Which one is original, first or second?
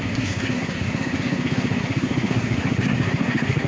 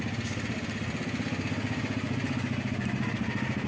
second